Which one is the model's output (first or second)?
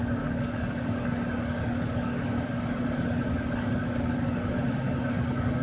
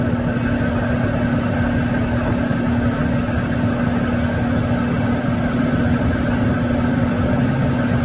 first